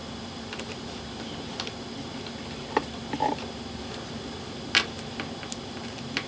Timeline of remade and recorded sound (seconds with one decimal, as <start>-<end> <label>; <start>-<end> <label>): 0.0-6.3 recorded